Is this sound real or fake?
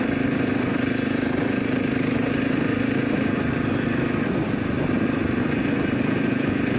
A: fake